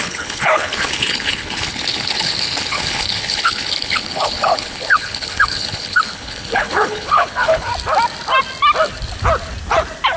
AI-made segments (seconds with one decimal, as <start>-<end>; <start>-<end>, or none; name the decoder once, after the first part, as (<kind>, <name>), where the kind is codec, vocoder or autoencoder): 0.0-7.7 (codec, HILCodec)